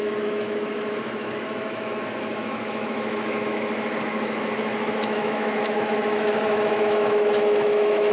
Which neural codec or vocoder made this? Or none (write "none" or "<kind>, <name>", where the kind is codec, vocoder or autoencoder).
autoencoder, DAC-VAE